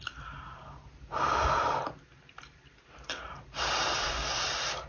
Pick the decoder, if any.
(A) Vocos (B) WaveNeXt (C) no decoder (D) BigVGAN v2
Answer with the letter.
C